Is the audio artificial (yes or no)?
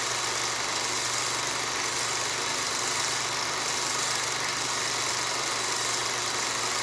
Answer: no